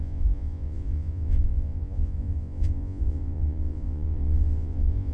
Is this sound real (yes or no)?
no